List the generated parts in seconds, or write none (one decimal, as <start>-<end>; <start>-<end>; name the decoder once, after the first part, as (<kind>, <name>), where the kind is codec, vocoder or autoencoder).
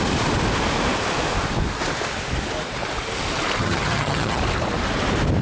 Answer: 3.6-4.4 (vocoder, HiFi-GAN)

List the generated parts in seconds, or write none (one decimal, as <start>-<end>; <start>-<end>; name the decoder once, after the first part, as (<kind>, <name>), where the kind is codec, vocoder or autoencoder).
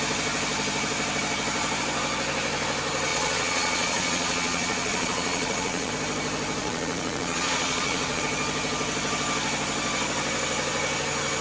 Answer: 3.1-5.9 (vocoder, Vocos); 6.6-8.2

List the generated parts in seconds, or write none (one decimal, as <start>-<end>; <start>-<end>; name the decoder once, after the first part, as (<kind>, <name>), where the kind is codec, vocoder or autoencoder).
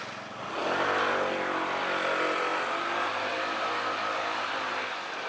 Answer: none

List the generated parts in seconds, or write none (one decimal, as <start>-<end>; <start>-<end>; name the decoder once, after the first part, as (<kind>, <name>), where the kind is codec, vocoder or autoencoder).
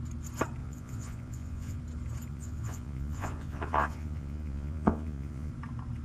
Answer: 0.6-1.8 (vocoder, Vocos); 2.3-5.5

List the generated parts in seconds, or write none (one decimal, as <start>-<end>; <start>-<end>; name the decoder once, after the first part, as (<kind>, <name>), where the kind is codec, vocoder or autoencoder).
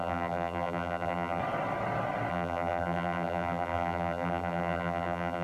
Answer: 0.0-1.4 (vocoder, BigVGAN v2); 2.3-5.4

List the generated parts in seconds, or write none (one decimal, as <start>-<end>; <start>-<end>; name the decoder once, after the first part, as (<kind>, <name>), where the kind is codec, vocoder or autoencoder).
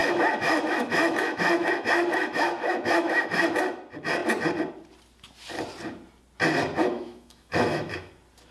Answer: 0.0-3.4 (autoencoder, DAC-VAE); 6.8-8.1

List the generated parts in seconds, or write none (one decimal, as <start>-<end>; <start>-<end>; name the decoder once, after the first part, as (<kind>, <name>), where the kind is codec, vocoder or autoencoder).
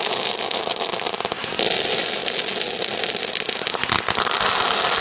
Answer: none